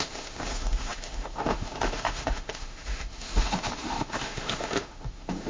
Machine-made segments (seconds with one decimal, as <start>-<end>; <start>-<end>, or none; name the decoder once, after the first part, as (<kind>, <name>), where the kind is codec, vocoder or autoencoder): 0.0-5.5 (autoencoder, DAC-VAE)